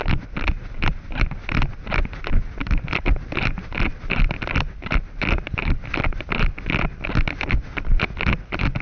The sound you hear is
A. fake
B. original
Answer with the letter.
B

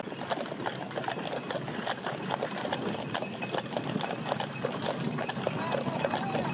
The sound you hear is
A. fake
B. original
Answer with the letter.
B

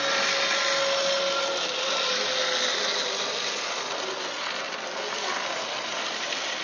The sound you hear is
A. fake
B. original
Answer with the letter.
B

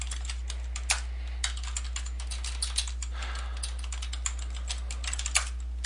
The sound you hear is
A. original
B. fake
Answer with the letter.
A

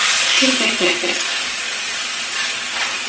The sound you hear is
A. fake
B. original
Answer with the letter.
A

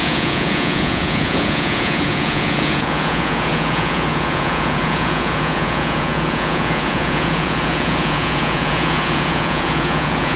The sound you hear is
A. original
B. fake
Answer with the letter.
B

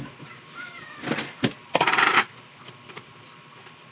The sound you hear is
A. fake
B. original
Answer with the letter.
A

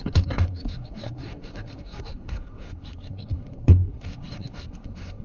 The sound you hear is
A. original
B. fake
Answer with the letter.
B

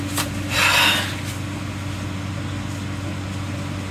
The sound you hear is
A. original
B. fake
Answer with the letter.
A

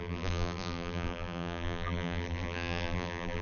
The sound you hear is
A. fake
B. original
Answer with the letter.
A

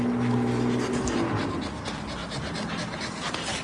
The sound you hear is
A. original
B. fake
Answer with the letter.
A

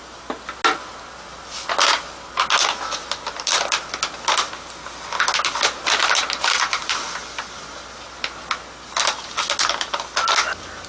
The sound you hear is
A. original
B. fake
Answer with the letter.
A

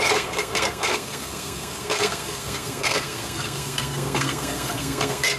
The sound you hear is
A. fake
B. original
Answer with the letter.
A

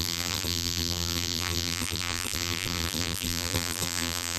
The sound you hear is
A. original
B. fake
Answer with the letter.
B